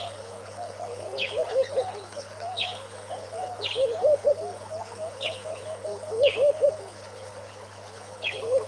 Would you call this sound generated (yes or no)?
yes